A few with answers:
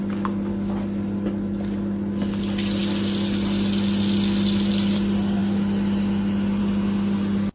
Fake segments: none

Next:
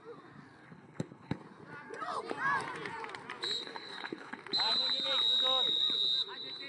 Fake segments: 0.6-1.4 (codec, HILCodec); 3.6-4.4

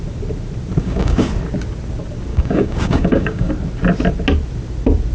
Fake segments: 0.8-1.3 (codec, DAC); 2.3-3.5

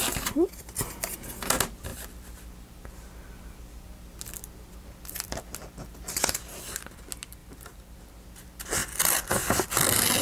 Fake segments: 7.4-8.0 (vocoder, BigVGAN v2)